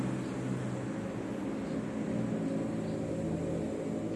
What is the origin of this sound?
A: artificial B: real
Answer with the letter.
B